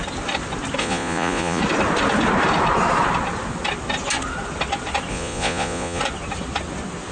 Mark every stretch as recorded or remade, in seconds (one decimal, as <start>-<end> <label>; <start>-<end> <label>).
0.0-0.8 recorded; 0.8-1.6 remade; 1.6-5.1 recorded; 5.1-6.0 remade; 6.0-7.1 recorded